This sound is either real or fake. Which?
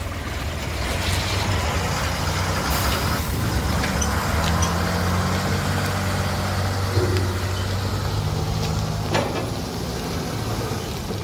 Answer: real